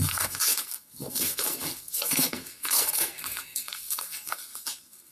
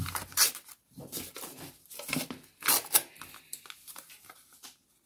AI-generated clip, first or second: first